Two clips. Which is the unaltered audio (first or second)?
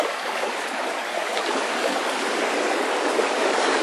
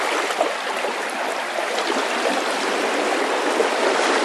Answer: second